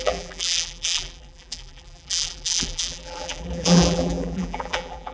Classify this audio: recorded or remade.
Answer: remade